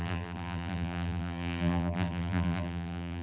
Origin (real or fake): fake